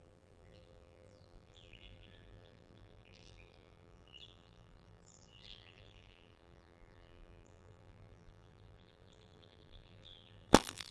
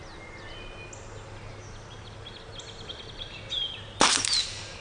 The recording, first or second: second